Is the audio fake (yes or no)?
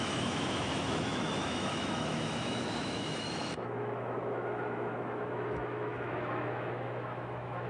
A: yes